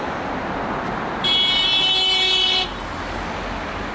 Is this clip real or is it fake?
real